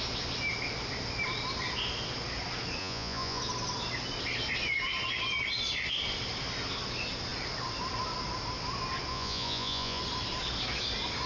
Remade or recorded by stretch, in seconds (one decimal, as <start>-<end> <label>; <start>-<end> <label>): 0.0-2.8 recorded; 2.8-3.4 remade; 3.4-9.1 recorded; 9.1-10.0 remade; 10.0-11.3 recorded